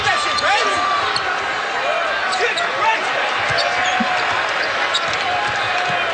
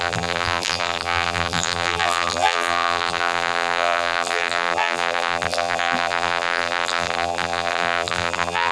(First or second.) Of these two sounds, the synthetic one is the second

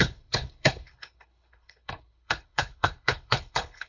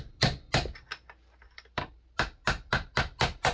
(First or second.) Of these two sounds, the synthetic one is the first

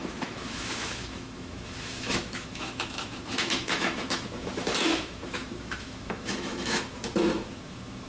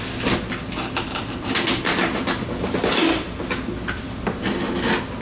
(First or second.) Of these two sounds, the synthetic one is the first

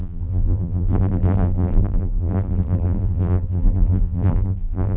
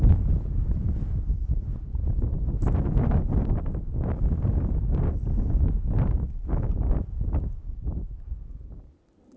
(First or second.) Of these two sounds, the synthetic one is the first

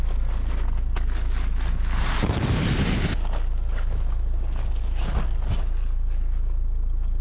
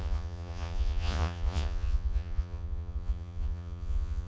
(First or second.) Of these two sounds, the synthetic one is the second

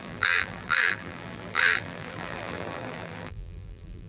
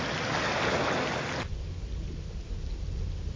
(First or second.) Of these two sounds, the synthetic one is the first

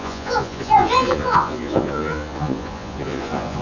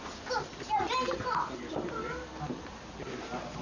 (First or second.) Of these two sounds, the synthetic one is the first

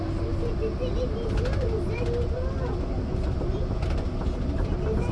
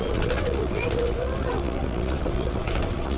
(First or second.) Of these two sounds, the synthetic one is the second